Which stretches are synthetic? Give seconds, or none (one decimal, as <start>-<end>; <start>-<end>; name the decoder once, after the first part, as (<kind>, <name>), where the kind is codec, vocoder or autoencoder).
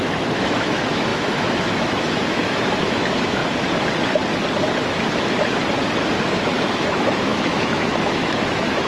0.0-3.4 (autoencoder, DAC-VAE); 6.4-8.9